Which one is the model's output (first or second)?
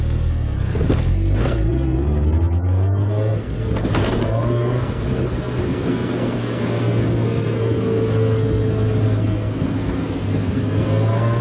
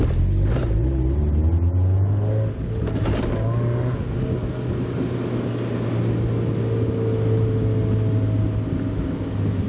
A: first